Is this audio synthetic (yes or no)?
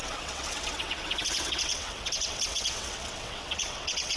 yes